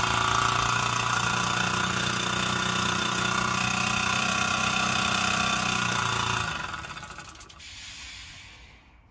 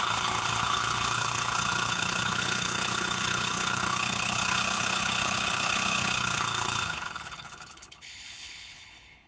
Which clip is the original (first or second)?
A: first